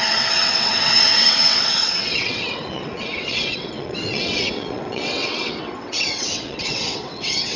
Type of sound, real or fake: fake